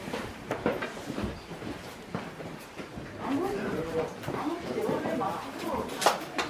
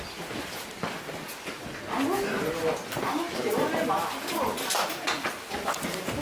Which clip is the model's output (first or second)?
first